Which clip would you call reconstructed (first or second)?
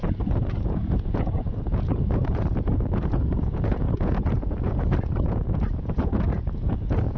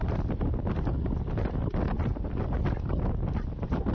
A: first